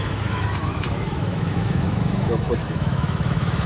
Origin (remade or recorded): remade